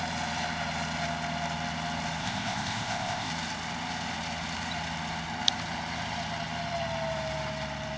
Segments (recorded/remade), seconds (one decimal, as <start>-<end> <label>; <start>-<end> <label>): 0.0-2.2 recorded; 2.2-3.3 remade; 3.3-8.0 recorded